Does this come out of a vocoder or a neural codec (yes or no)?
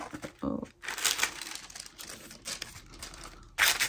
no